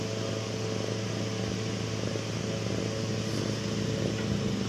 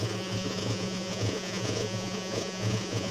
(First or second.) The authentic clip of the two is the first